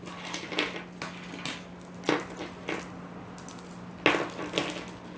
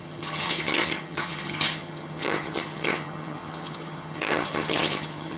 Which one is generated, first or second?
second